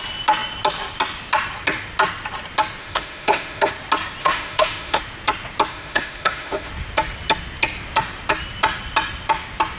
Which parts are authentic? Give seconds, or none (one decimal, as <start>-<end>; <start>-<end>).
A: 0.0-2.8; 3.7-4.2; 5.0-5.7; 6.7-9.8